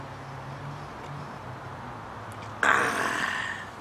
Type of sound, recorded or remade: recorded